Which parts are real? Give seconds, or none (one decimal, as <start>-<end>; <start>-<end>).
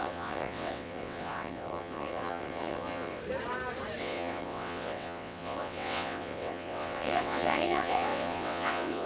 3.2-4.0